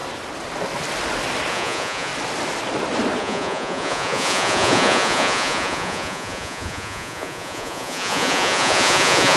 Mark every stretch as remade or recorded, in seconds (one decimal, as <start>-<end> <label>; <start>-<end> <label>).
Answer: 0.0-1.5 recorded; 1.5-2.1 remade; 2.1-3.2 recorded; 3.2-9.4 remade

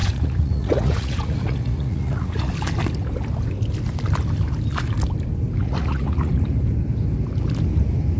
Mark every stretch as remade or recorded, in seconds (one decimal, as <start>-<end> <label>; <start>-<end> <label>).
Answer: 0.0-2.5 remade; 2.5-5.6 recorded; 5.6-6.3 remade; 6.3-8.2 recorded

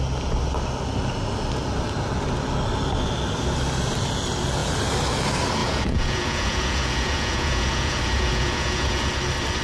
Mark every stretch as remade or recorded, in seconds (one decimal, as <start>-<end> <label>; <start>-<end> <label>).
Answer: 0.0-5.6 recorded; 5.6-9.1 remade; 9.1-9.6 recorded

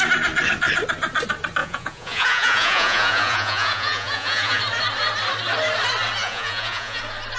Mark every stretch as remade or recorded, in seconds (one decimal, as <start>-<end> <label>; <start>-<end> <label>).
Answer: 0.0-1.6 recorded; 1.6-4.6 remade; 4.6-6.2 recorded; 6.2-7.0 remade; 7.0-7.4 recorded

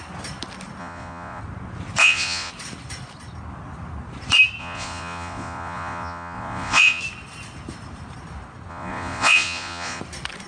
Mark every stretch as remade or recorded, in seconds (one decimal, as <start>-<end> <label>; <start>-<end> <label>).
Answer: 0.0-0.8 recorded; 0.8-1.4 remade; 1.4-2.0 recorded; 2.0-2.5 remade; 2.5-4.6 recorded; 4.6-7.0 remade; 7.0-8.7 recorded; 8.7-10.0 remade; 10.0-10.5 recorded